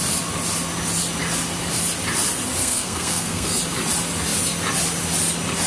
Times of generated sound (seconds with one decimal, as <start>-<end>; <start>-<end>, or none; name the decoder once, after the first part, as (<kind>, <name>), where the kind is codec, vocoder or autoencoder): 2.6-3.6 (codec, SNAC)